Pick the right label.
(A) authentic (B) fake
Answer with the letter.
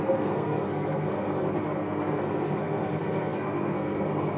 B